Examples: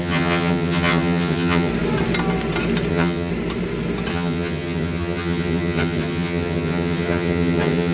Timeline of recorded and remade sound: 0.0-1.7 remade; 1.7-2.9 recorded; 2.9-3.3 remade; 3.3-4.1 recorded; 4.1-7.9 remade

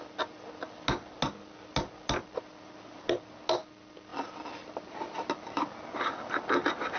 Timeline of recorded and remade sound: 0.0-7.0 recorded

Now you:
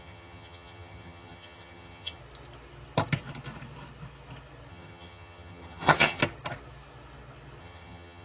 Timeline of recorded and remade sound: 0.0-2.2 remade; 2.2-4.7 recorded; 4.7-6.2 remade; 6.2-7.6 recorded; 7.6-8.2 remade

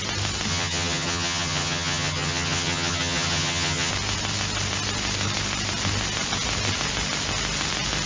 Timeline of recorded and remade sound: 0.0-0.5 recorded; 0.5-3.9 remade; 3.9-8.1 recorded